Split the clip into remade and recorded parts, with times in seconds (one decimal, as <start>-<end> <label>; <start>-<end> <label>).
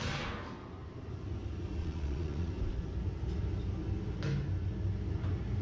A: 0.0-1.8 recorded; 1.8-2.5 remade; 2.5-5.6 recorded